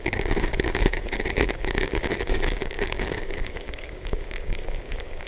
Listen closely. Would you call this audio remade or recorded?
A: remade